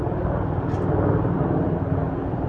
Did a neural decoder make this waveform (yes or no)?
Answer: yes